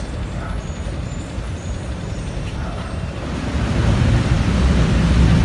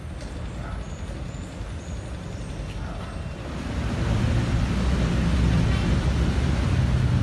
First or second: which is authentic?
second